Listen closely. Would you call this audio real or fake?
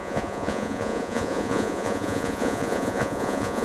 fake